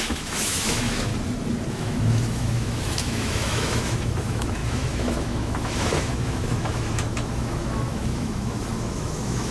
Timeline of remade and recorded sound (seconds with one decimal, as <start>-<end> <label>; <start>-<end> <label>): 0.0-1.1 remade; 1.1-1.7 recorded; 1.7-9.5 remade